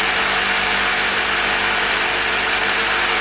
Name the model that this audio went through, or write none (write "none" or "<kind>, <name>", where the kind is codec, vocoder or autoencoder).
vocoder, BigVGAN v2